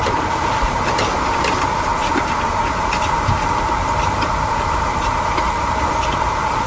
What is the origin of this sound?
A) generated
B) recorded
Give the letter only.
B